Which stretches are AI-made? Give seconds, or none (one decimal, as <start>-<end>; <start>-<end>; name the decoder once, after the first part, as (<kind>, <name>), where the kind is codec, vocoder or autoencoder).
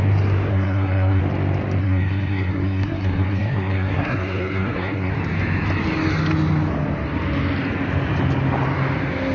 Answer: 0.5-1.2 (codec, SNAC); 1.8-5.1